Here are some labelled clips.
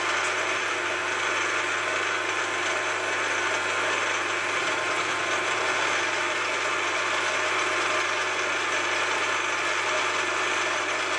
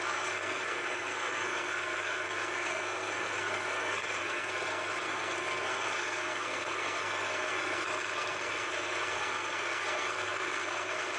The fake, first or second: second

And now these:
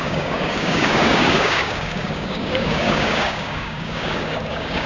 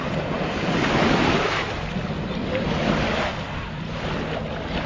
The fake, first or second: first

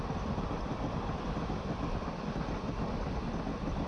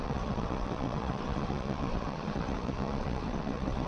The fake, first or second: second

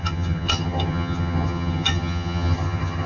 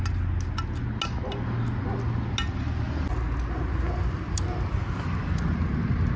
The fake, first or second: first